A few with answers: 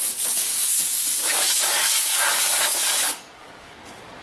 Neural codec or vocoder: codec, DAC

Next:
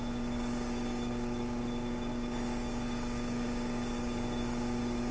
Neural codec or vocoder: codec, DAC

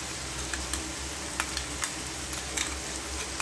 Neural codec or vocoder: none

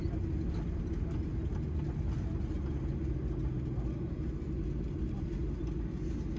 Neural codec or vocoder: none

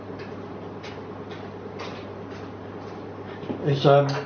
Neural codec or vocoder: none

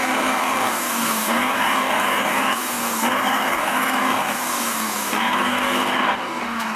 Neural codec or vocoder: codec, DAC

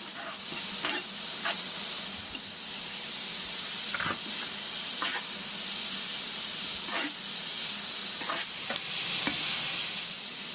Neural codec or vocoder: none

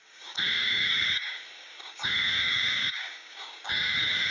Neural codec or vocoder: codec, DAC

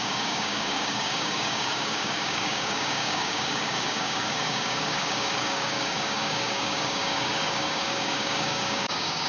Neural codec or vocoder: codec, DAC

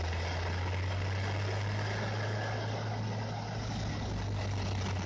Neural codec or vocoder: none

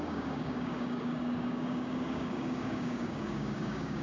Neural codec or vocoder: codec, DAC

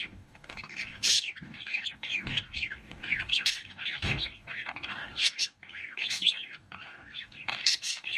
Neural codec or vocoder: codec, DAC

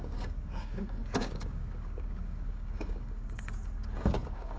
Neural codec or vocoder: codec, DAC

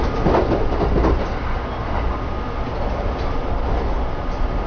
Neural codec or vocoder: none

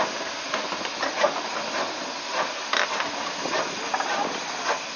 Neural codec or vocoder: none